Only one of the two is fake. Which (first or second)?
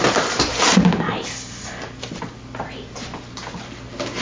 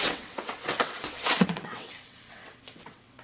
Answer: second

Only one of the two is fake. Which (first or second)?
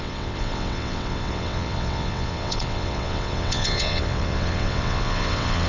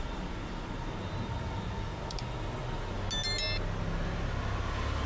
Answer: first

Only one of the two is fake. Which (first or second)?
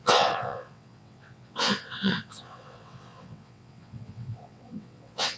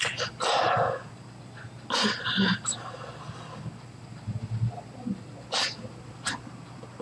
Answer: first